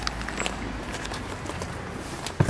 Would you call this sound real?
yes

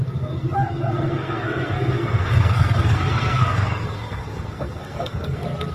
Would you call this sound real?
no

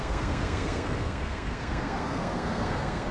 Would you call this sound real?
no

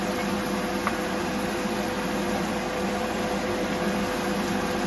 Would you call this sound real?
yes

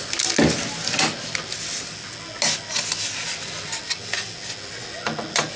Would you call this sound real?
yes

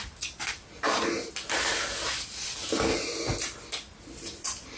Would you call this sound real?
yes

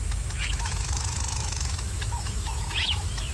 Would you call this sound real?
no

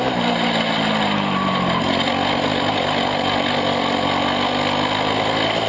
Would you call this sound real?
yes